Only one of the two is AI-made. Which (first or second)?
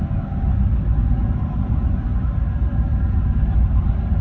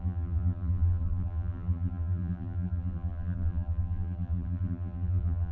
second